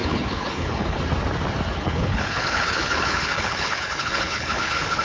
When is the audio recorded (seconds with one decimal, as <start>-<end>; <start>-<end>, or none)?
1.0-1.7